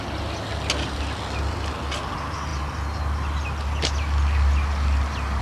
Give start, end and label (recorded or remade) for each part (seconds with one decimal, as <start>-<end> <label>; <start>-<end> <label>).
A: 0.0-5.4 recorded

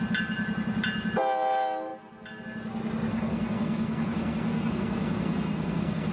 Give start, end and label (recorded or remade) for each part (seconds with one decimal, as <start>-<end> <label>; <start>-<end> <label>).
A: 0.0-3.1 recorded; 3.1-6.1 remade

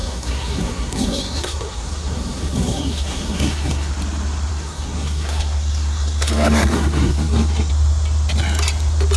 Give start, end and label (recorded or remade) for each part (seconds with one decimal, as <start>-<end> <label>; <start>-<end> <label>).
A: 0.0-3.9 remade; 3.9-4.5 recorded; 4.5-7.7 remade; 7.7-9.2 recorded

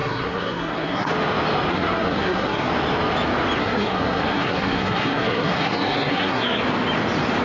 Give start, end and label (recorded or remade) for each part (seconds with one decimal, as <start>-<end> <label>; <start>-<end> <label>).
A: 0.0-1.1 remade; 1.1-1.7 recorded; 1.7-2.7 remade; 2.7-3.6 recorded; 3.6-6.6 remade; 6.6-7.4 recorded

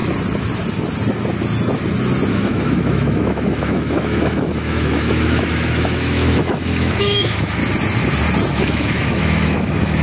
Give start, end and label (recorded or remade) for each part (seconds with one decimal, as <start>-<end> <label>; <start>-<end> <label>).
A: 0.0-2.3 recorded; 2.3-7.6 remade; 7.6-8.5 recorded; 8.5-10.0 remade